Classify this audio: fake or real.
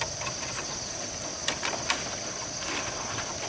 real